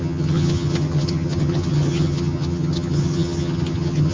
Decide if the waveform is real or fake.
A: fake